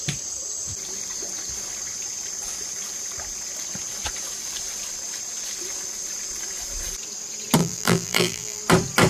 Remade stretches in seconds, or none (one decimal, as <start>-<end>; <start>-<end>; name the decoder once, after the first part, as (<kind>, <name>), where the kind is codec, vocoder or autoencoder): 7.6-8.6 (vocoder, BigVGAN v2)